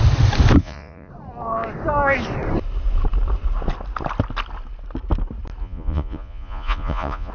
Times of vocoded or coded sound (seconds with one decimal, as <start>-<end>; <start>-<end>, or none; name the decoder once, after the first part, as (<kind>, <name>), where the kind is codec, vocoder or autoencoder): 0.6-1.1 (vocoder, Vocos); 5.6-7.3